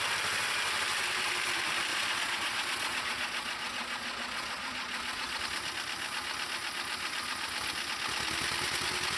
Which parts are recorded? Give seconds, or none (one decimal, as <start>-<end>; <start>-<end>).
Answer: 0.0-1.9; 5.4-9.2